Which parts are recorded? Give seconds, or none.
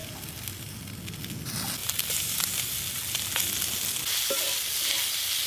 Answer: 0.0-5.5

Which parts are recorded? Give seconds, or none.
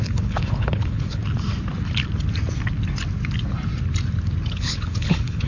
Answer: 1.2-4.5